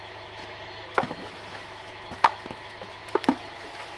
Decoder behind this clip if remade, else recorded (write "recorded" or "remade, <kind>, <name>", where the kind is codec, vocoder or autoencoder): remade, autoencoder, DAC-VAE